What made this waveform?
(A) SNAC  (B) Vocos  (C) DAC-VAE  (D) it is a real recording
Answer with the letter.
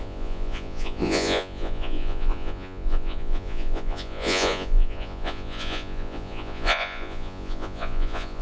B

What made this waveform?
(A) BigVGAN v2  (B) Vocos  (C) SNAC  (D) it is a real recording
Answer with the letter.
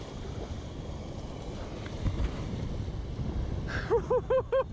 D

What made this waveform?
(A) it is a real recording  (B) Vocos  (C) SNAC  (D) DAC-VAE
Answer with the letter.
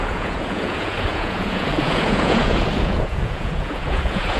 B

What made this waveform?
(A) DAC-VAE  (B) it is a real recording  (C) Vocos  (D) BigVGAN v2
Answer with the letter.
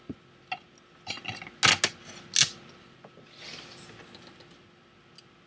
B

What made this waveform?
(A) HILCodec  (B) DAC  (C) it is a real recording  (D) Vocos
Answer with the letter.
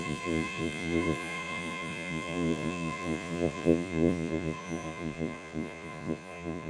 D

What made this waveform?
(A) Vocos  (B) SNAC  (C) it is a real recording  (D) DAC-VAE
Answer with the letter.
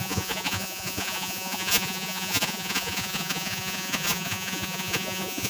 A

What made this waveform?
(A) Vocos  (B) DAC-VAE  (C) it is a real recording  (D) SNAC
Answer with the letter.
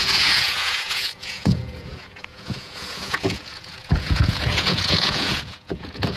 A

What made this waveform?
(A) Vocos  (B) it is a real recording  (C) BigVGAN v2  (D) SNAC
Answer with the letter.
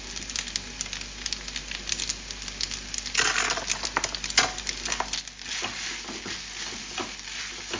B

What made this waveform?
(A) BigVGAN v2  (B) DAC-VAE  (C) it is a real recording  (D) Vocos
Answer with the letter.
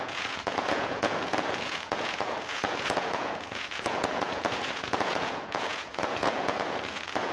D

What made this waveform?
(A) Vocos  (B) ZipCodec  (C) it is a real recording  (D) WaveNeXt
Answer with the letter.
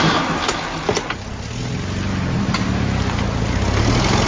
C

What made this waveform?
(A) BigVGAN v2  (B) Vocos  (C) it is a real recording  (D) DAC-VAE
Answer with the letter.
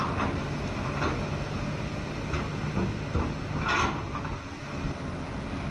C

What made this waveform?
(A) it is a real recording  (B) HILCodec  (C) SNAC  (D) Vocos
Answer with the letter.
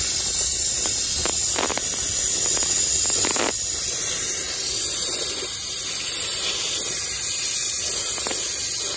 A